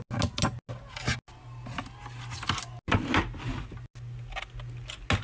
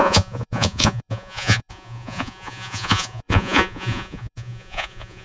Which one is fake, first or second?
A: second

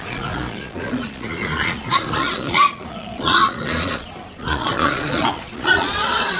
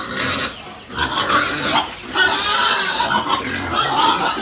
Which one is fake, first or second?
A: first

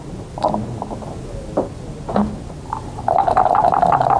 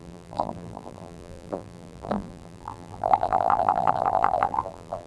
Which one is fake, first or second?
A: second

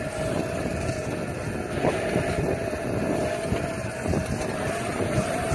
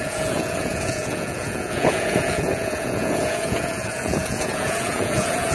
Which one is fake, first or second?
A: second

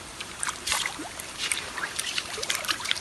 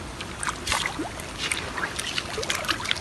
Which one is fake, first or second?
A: first